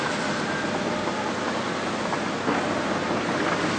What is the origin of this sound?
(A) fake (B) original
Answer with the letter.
B